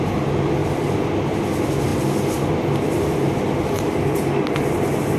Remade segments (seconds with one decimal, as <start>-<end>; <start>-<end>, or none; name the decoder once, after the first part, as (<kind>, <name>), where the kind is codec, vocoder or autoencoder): none